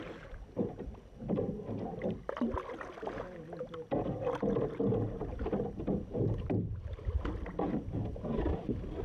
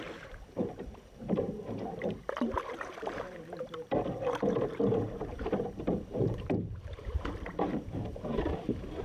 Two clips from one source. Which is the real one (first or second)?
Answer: first